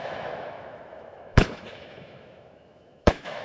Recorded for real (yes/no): no